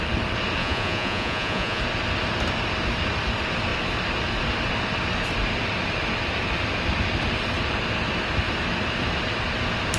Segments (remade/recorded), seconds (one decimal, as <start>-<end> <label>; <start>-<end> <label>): 0.0-0.6 recorded; 0.6-1.8 remade; 1.8-10.0 recorded